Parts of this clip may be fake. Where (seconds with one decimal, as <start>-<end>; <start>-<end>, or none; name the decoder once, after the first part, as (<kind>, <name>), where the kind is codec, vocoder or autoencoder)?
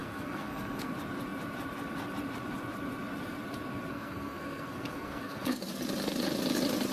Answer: 0.0-0.9 (codec, SNAC); 3.9-5.7